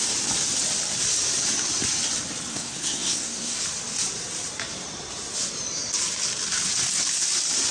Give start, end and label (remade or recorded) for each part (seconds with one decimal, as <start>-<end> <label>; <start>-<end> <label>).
0.0-2.5 recorded; 2.5-3.6 remade; 3.6-7.7 recorded